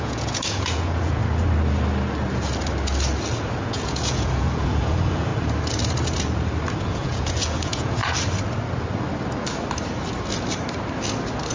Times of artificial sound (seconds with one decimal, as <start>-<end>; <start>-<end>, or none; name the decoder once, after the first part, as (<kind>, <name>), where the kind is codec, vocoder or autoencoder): 0.0-1.2 (vocoder, Vocos); 3.6-5.3; 6.8-8.0